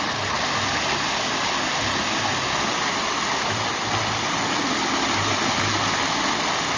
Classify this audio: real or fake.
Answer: real